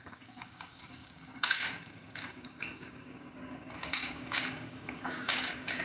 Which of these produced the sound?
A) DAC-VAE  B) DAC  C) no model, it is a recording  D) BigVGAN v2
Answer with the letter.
B